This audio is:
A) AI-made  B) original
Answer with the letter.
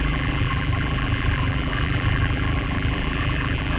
A